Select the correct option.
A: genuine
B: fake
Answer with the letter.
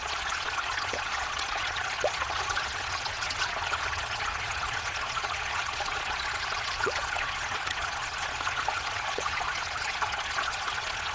B